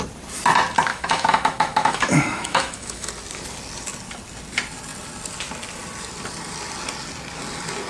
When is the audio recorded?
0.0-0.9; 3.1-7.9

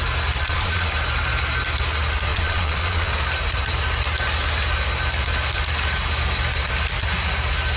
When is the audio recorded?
0.0-0.4; 0.9-2.3; 3.1-7.8

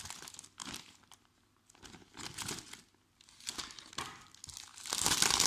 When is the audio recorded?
0.0-5.5

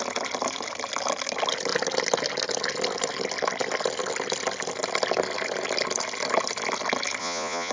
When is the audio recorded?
0.0-7.2

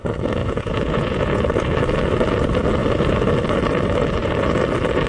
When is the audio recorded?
0.0-0.4; 1.4-5.1

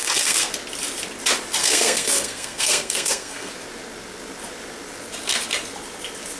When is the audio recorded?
0.5-1.6; 3.5-6.4